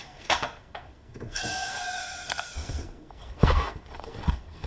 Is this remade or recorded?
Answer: remade